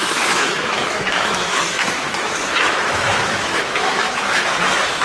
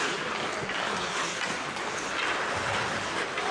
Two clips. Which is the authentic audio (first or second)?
second